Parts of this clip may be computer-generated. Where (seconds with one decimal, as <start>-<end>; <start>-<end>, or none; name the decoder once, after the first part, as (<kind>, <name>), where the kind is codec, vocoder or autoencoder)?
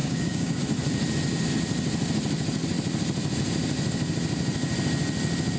0.0-0.6 (codec, DAC)